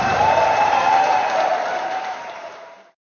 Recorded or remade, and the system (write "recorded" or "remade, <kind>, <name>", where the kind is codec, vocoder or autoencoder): remade, vocoder, BigVGAN v2